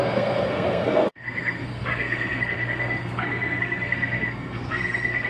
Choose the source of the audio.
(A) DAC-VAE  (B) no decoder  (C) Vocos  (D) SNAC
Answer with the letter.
D